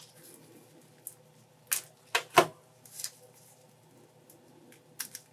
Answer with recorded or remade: recorded